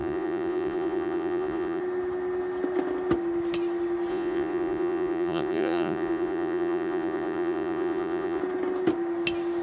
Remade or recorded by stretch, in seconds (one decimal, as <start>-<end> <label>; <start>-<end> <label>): 0.0-1.8 remade; 1.8-4.1 recorded; 4.1-8.4 remade; 8.4-9.6 recorded